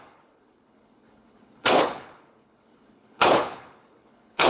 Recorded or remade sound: remade